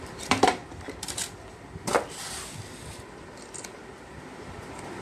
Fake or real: fake